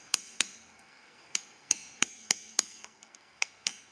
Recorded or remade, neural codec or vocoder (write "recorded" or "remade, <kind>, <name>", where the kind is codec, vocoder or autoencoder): remade, codec, SNAC